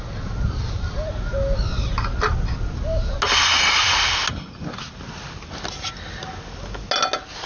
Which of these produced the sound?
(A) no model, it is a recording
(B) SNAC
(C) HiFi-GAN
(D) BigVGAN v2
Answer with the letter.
A